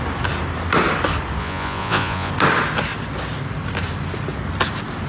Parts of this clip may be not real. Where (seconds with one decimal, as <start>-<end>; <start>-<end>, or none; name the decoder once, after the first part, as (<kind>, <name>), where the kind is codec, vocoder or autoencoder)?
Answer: 1.4-2.3 (vocoder, Vocos)